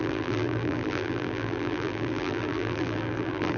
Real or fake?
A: fake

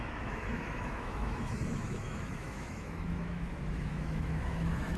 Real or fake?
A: fake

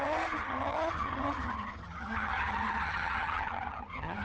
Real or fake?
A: fake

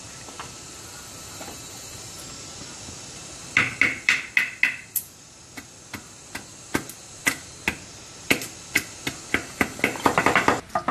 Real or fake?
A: real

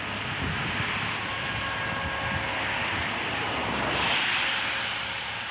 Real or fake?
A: real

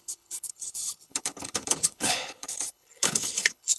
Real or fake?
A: fake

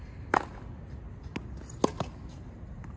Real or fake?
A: real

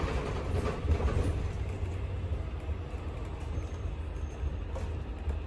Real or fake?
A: real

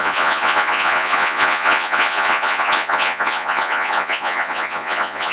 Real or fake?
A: fake